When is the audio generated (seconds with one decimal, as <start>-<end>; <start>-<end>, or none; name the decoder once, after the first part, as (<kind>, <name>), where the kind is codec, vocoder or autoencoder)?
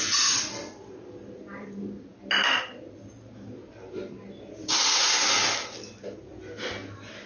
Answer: none